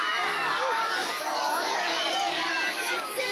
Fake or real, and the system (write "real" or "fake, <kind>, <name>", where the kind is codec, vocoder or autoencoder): fake, codec, DAC